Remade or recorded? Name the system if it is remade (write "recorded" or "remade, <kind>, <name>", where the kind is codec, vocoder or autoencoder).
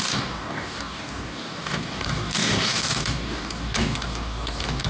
remade, codec, DAC